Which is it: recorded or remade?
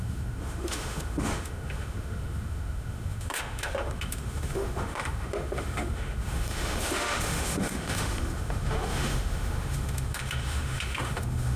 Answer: remade